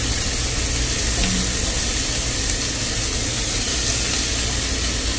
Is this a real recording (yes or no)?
yes